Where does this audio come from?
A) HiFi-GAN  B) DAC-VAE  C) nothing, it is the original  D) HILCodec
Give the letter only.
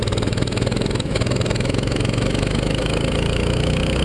B